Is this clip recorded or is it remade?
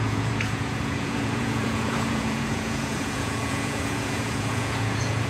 remade